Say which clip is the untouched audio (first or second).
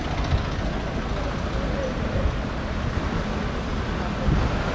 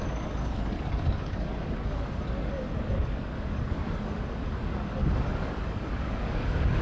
first